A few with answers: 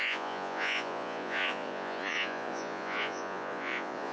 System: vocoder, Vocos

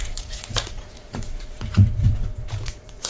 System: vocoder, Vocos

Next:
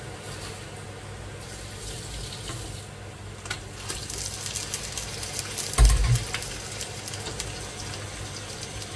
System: none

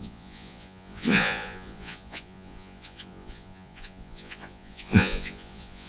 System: vocoder, Vocos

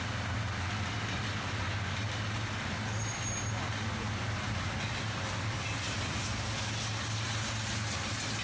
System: none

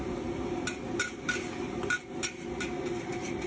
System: none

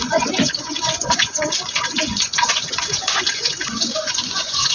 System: vocoder, Vocos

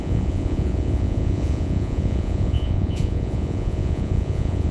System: vocoder, Vocos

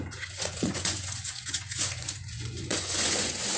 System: vocoder, Vocos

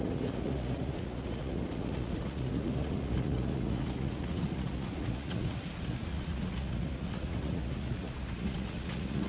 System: vocoder, Vocos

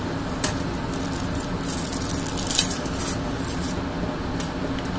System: none